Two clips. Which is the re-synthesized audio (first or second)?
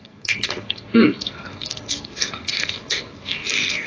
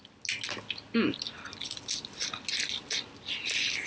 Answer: first